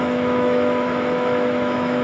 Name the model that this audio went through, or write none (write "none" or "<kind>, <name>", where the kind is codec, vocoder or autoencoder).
autoencoder, DAC-VAE